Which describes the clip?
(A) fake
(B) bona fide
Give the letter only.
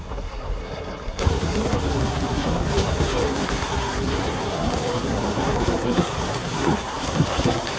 A